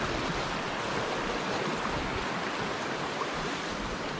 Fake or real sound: real